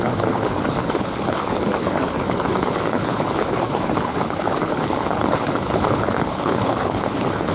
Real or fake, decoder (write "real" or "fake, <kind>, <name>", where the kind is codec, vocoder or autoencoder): fake, codec, HILCodec